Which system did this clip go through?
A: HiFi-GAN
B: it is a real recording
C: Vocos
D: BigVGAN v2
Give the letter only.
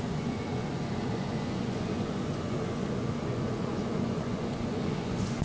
C